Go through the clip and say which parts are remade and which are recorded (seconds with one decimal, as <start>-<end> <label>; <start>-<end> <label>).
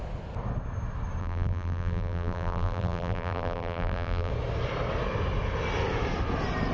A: 0.0-1.2 recorded; 1.2-4.3 remade; 4.3-6.7 recorded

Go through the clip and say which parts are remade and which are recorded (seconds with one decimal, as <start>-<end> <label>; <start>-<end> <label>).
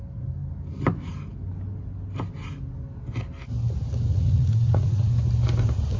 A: 0.0-4.1 recorded; 4.1-5.1 remade; 5.1-6.0 recorded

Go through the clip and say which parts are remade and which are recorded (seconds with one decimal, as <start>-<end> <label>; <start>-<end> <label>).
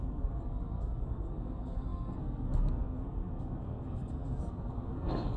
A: 0.0-5.4 remade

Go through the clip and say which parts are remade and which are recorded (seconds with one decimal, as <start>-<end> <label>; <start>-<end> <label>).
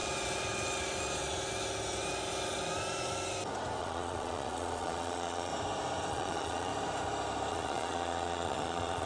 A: 0.0-3.8 recorded; 3.8-5.5 remade; 5.5-6.1 recorded; 6.1-6.7 remade; 6.7-7.5 recorded; 7.5-9.1 remade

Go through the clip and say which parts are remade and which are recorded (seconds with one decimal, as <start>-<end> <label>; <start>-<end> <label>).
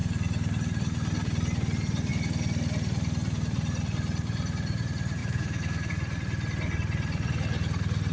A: 0.0-5.2 recorded; 5.2-5.9 remade; 5.9-8.1 recorded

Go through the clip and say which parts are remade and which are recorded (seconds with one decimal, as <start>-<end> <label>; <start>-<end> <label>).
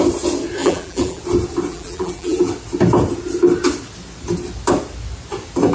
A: 0.0-0.6 recorded; 0.6-1.2 remade; 1.2-1.7 recorded; 1.7-2.5 remade; 2.5-5.7 recorded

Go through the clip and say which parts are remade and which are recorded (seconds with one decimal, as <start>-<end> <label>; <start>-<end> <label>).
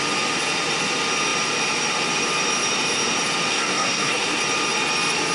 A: 0.0-3.5 recorded; 3.5-4.4 remade; 4.4-5.3 recorded